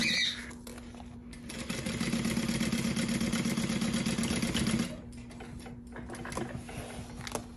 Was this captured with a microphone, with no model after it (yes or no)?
yes